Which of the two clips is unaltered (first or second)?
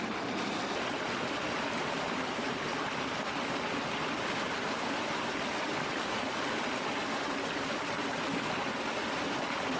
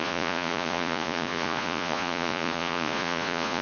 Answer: first